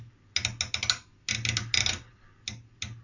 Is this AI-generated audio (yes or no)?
no